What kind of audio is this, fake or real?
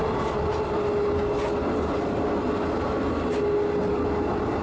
real